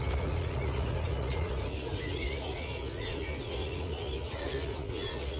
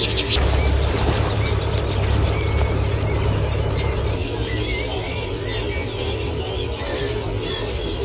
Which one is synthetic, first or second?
first